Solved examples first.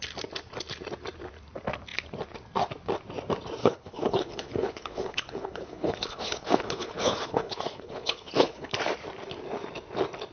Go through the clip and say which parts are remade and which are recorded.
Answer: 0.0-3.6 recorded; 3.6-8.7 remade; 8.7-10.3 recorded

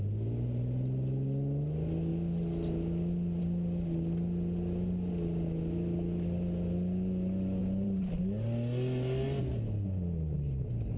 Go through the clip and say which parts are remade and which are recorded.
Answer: 0.0-7.6 recorded; 7.6-8.2 remade; 8.2-11.0 recorded

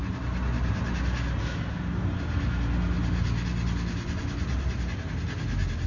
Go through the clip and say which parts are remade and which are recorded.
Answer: 0.0-5.9 recorded

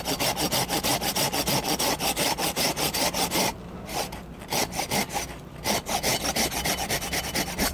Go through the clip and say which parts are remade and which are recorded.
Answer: 0.0-7.7 recorded

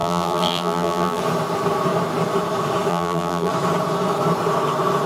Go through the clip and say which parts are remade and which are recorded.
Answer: 0.0-1.2 remade; 1.2-2.9 recorded; 2.9-3.5 remade; 3.5-5.1 recorded

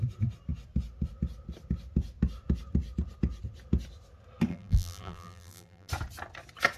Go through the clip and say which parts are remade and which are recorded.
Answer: 0.0-4.5 recorded; 4.5-5.9 remade; 5.9-6.8 recorded

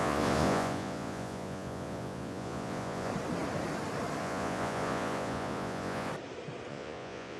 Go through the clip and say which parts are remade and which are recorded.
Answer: 0.0-3.1 remade; 3.1-4.2 recorded; 4.2-6.1 remade; 6.1-6.7 recorded; 6.7-7.4 remade